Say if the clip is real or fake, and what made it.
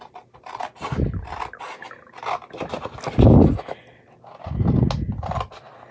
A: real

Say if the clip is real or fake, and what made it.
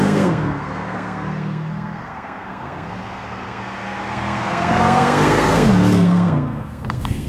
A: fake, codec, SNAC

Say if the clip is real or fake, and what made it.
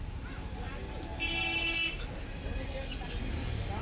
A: real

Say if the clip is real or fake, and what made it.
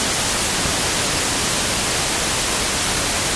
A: real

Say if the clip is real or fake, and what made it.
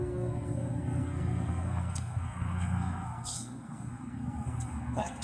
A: fake, codec, SNAC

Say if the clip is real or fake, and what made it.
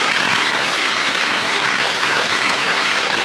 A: fake, codec, SNAC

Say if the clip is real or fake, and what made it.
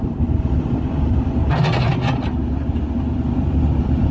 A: real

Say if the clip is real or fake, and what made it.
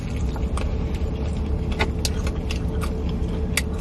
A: real